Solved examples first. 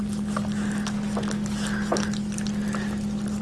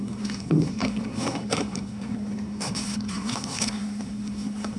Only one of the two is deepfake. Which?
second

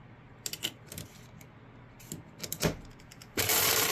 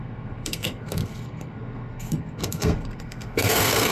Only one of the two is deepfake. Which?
second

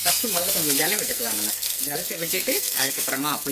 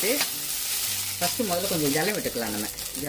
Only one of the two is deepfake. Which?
first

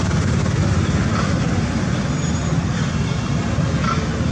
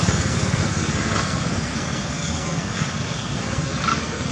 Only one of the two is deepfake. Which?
second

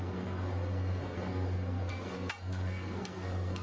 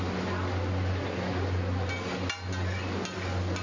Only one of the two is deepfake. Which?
first